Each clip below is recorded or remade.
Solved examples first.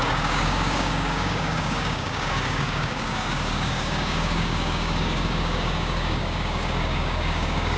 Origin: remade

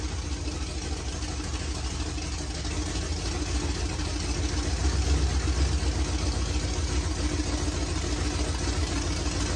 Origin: recorded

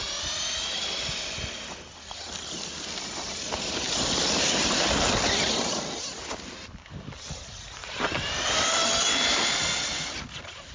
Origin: recorded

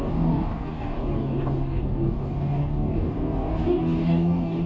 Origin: remade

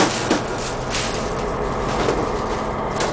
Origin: recorded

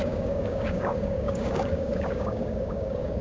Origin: remade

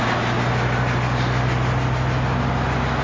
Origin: recorded